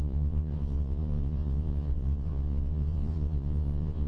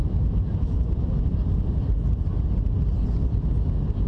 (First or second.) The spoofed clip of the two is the first